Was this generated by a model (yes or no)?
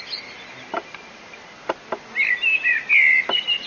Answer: no